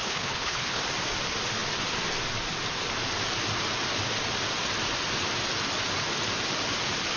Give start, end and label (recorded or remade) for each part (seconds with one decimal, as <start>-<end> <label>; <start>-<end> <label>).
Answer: 0.0-0.8 remade; 0.8-7.2 recorded